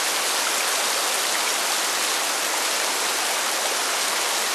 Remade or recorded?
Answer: recorded